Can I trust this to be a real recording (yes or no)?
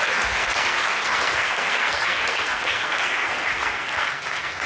no